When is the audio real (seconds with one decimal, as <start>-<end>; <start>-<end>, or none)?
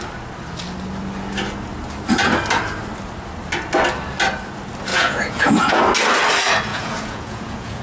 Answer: 0.0-4.9; 5.8-6.7